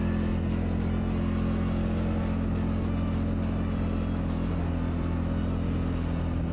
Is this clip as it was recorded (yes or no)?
yes